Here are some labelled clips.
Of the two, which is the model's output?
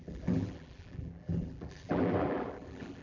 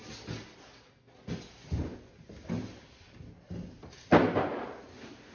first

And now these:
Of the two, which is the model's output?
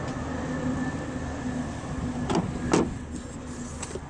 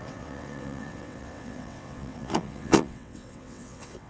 second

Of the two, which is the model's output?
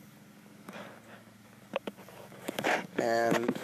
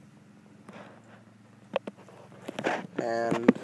first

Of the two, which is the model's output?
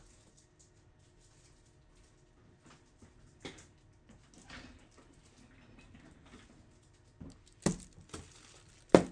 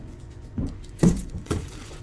second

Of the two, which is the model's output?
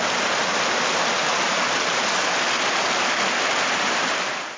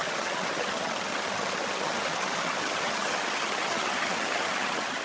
second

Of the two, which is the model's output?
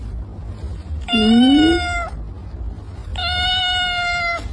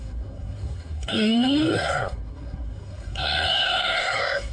second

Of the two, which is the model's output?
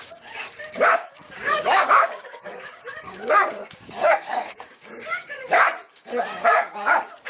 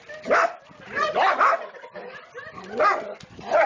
first